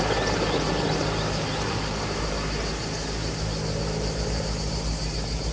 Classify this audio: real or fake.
real